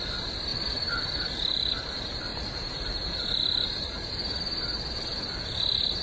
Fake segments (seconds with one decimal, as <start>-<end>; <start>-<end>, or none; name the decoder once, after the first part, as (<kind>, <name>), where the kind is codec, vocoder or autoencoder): 0.5-1.7 (vocoder, BigVGAN v2); 2.3-4.1